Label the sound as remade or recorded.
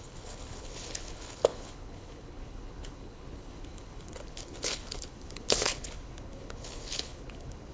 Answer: remade